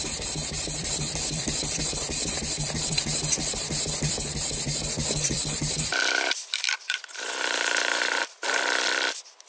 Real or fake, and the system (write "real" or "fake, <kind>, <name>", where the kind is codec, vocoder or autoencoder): fake, vocoder, BigVGAN v2